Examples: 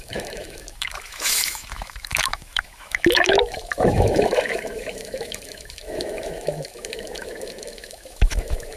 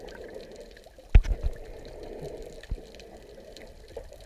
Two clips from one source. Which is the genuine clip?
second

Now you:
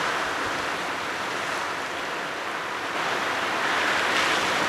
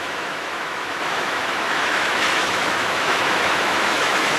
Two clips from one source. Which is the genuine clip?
first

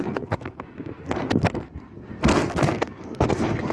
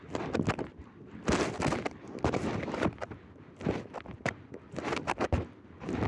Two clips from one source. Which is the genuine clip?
second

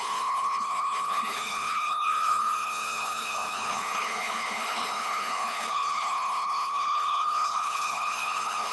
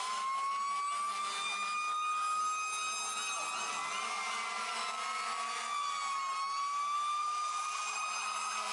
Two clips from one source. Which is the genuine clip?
second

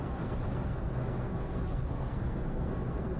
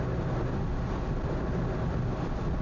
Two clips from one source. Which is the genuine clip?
second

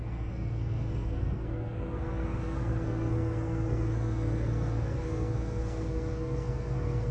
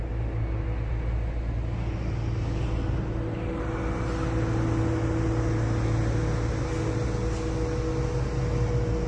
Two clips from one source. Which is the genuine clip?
second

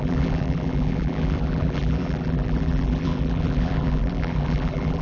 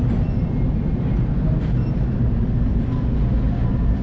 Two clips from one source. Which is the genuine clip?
second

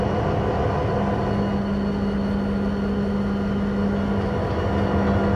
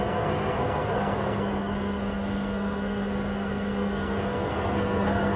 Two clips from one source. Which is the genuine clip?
first